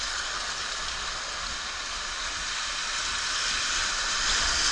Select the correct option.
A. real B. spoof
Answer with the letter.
A